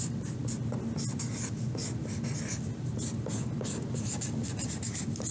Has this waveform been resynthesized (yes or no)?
no